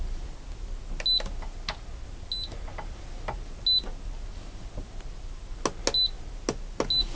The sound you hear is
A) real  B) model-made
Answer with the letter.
A